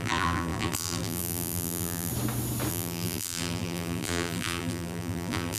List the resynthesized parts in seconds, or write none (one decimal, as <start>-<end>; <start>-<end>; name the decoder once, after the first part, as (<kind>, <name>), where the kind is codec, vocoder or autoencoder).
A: 0.0-2.1 (vocoder, BigVGAN v2); 2.7-5.6